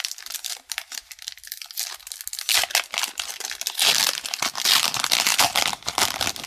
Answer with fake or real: real